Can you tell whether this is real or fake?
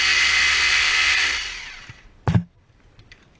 real